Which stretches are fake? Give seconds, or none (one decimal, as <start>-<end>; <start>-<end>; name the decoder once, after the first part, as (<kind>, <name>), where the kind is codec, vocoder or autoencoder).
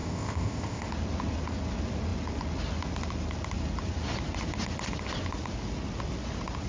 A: 0.0-0.9 (codec, ZipCodec)